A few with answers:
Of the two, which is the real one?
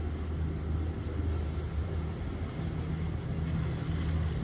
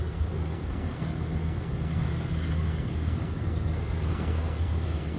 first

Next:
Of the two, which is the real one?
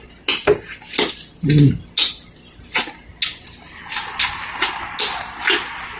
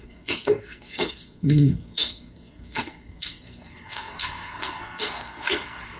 first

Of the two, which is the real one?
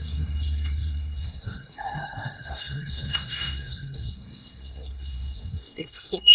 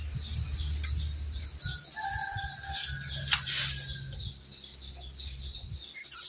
second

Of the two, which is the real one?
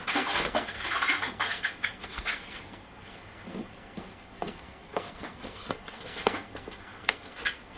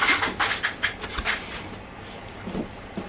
second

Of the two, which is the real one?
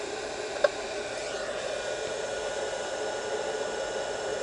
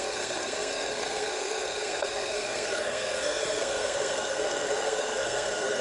first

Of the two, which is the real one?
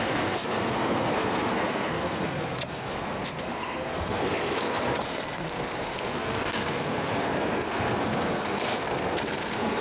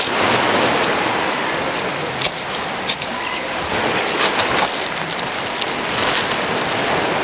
second